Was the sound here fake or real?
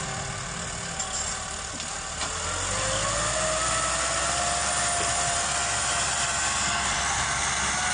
real